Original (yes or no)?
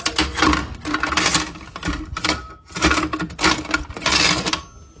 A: yes